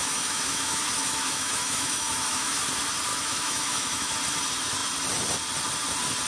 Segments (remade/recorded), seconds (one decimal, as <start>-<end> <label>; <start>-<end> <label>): 0.0-2.6 remade; 2.6-3.1 recorded; 3.1-4.1 remade; 4.1-6.3 recorded